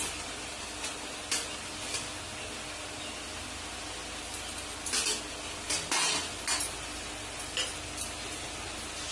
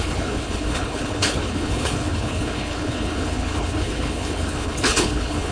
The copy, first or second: second